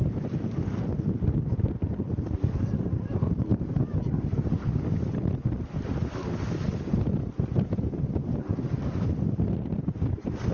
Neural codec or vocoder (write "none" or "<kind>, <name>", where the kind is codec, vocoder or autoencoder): none